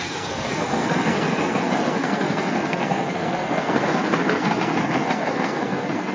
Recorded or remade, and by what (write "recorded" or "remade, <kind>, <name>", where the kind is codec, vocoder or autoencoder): remade, codec, SNAC